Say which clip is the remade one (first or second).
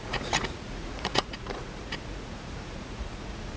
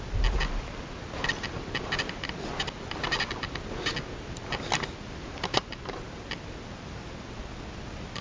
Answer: first